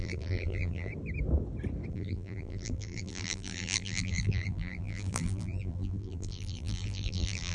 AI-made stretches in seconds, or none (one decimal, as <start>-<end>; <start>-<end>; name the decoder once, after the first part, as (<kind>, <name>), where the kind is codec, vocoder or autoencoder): 0.0-0.9 (vocoder, BigVGAN v2); 1.9-7.5